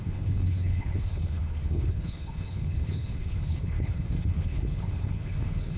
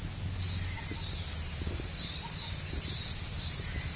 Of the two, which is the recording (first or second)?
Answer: second